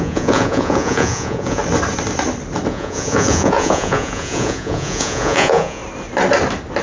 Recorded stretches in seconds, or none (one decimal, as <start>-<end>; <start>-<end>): 1.6-2.7; 5.8-6.8